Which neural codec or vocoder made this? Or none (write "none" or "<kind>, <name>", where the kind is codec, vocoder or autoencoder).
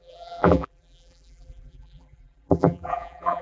vocoder, BigVGAN v2